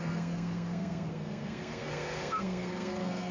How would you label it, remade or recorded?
remade